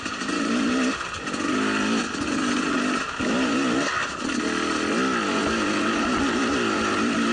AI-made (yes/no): no